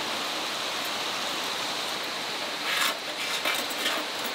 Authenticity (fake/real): real